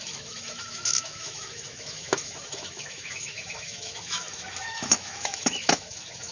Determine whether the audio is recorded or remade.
remade